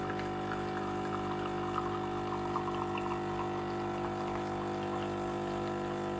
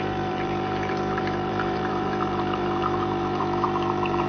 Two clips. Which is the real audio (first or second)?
first